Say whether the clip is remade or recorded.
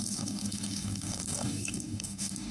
remade